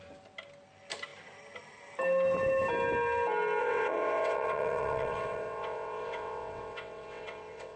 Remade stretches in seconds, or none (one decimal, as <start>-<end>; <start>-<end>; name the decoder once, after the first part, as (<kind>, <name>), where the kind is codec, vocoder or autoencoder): 3.6-7.8 (vocoder, WaveNeXt)